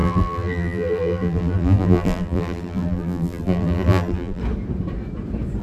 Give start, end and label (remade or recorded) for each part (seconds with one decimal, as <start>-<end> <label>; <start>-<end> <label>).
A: 0.0-4.4 remade; 4.4-5.6 recorded